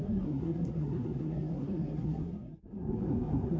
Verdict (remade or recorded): remade